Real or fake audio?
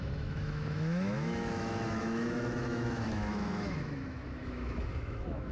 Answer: fake